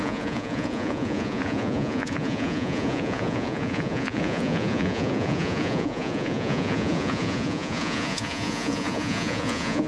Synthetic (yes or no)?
yes